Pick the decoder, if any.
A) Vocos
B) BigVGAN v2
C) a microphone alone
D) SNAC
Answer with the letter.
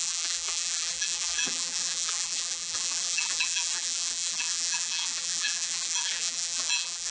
B